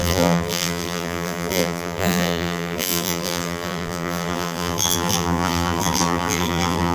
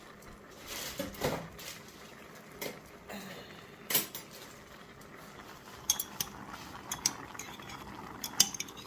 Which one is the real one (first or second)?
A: second